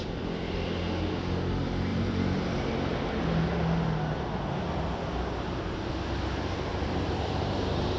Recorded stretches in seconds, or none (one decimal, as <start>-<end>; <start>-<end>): 0.0-1.9; 2.4-6.7